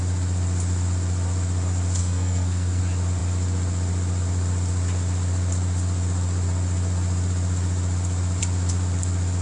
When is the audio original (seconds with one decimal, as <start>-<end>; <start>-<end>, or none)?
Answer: 0.0-2.0; 2.8-9.4